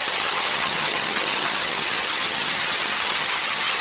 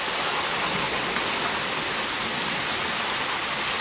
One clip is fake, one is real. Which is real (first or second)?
second